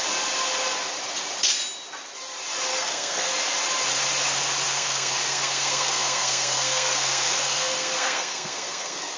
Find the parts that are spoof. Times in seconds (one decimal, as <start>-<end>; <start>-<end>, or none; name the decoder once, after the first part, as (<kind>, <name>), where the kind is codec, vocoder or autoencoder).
2.7-3.3 (codec, SNAC); 4.7-9.2